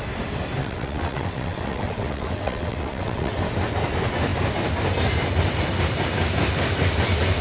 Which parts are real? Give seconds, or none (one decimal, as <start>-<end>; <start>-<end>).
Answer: 0.0-0.6; 3.4-7.4